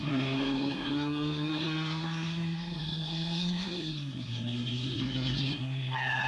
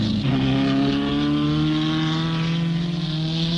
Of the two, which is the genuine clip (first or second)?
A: second